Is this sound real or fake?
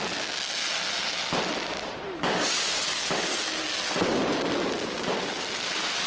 real